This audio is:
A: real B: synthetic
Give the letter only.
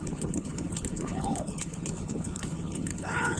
B